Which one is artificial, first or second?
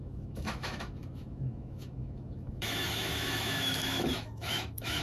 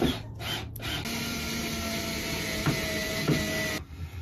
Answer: first